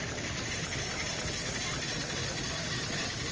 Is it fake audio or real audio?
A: real